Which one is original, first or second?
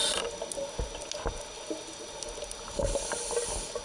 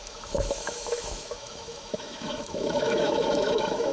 first